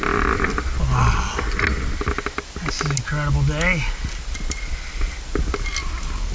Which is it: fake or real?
real